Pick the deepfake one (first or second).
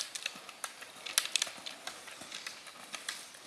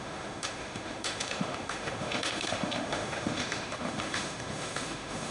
second